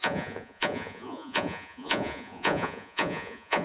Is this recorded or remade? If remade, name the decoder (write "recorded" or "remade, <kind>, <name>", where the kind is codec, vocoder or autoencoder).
remade, vocoder, Vocos